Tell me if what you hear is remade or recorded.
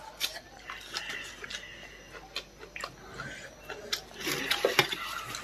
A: recorded